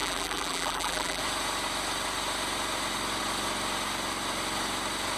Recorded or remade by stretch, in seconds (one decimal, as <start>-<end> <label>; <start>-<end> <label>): 0.0-1.2 remade; 1.2-5.2 recorded